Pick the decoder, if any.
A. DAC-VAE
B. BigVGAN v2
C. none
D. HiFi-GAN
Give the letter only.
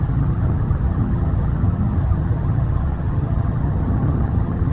D